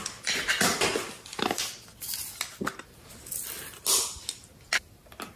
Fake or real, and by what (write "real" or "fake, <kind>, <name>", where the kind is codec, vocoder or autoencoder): real